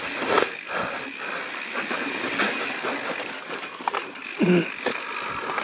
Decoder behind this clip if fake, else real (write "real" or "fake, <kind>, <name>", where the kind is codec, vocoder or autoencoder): fake, vocoder, BigVGAN v2